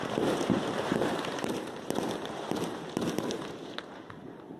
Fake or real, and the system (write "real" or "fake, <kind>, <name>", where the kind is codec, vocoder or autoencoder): fake, vocoder, BigVGAN v2